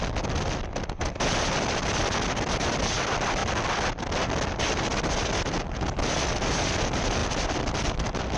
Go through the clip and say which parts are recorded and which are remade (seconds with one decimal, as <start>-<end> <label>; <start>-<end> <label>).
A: 0.0-3.4 remade; 3.4-4.5 recorded; 4.5-8.4 remade